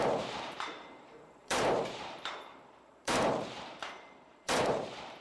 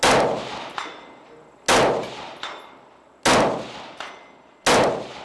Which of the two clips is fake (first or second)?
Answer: first